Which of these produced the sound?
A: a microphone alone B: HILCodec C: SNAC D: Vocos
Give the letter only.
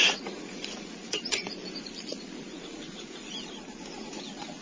D